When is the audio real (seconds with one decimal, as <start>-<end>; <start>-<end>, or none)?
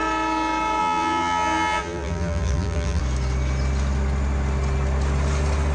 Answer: 0.0-0.8; 3.0-5.7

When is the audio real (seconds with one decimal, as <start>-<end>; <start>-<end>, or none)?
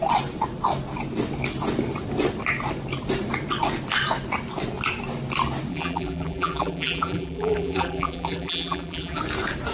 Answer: 0.0-5.7; 9.2-9.7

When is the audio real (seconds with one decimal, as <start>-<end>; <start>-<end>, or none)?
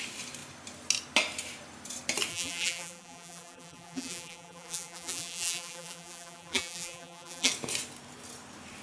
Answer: 0.0-2.3; 7.5-8.8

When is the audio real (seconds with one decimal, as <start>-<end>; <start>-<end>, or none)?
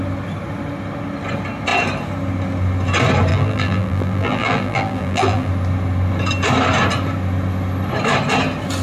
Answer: 0.0-3.3; 5.5-8.8